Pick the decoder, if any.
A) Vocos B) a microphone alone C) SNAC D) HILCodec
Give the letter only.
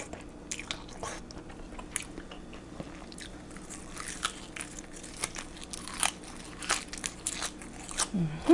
B